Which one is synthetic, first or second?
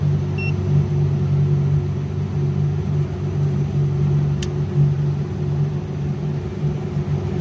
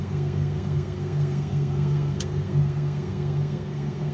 second